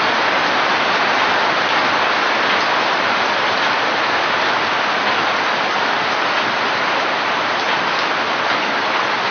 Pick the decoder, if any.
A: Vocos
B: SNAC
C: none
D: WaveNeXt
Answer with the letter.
C